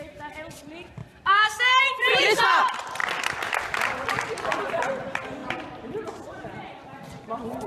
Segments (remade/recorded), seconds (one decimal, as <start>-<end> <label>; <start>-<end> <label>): 0.0-1.0 recorded; 1.0-1.8 remade; 1.8-5.4 recorded; 5.4-6.3 remade; 6.3-7.7 recorded